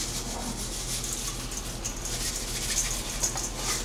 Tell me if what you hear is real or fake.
real